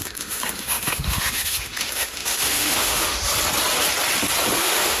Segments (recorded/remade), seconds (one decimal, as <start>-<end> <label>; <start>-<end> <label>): 0.0-3.3 remade; 3.3-4.6 recorded; 4.6-5.0 remade